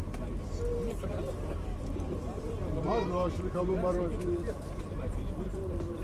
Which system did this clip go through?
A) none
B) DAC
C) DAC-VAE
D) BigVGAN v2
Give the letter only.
D